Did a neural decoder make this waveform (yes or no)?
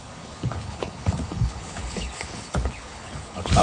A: yes